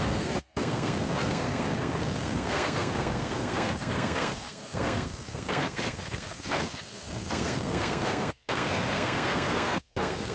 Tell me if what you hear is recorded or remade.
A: remade